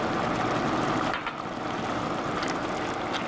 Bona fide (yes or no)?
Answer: yes